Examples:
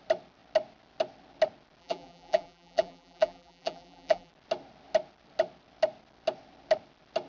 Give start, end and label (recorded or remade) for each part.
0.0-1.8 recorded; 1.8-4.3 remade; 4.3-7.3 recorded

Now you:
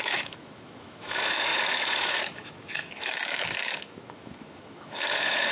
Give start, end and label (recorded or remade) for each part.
0.0-5.5 remade

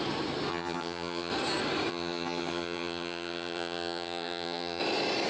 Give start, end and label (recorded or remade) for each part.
0.0-0.5 recorded; 0.5-1.3 remade; 1.3-1.9 recorded; 1.9-4.8 remade; 4.8-5.3 recorded

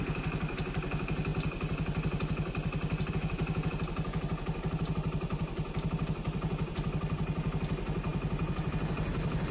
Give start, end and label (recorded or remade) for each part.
0.0-9.5 recorded